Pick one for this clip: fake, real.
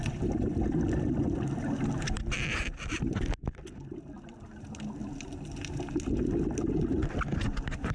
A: real